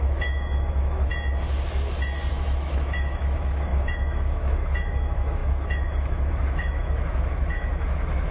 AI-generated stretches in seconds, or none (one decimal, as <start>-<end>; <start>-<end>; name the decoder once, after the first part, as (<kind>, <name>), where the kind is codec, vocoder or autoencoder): 0.0-1.1 (autoencoder, DAC-VAE); 2.3-8.3